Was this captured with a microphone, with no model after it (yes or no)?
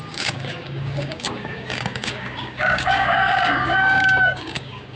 no